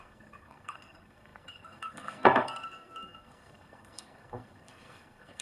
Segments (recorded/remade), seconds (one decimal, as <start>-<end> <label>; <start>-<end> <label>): 0.0-5.4 remade